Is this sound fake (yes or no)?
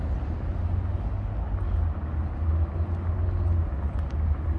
no